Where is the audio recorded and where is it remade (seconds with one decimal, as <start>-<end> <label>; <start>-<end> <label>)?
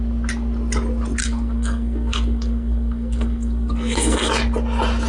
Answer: 0.0-1.2 recorded; 1.2-4.3 remade; 4.3-5.1 recorded